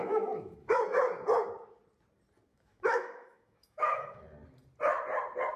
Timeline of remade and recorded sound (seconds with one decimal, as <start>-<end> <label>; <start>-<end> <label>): 0.0-1.0 remade; 1.0-2.5 recorded; 2.5-4.2 remade; 4.2-5.6 recorded